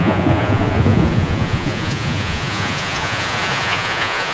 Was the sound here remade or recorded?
remade